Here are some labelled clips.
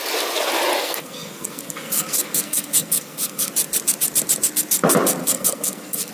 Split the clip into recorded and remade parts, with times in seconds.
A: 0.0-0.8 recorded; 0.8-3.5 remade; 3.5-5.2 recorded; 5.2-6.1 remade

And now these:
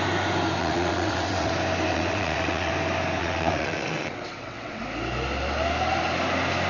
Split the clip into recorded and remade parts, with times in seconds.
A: 0.0-0.6 recorded; 0.6-1.5 remade; 1.5-1.9 recorded; 1.9-2.7 remade; 2.7-3.2 recorded; 3.2-4.8 remade; 4.8-6.7 recorded